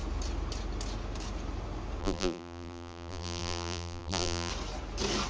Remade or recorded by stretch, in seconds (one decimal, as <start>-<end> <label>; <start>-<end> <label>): 0.0-2.0 recorded; 2.0-4.5 remade; 4.5-5.3 recorded